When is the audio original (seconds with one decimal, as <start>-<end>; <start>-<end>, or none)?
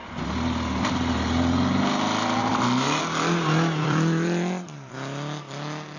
0.0-2.5; 3.0-3.8; 4.9-6.0